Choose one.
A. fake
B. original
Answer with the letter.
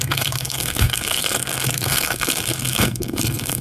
A